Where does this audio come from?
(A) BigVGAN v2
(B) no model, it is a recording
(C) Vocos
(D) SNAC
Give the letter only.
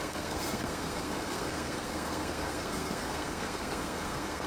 D